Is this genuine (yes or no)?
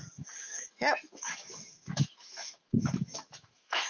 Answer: no